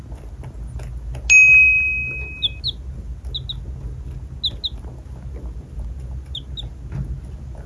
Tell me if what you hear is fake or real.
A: real